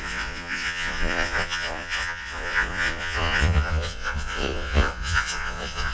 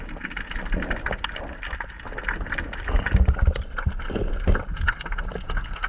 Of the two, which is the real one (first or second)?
second